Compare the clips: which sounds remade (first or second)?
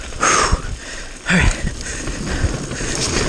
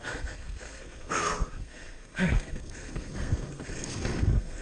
second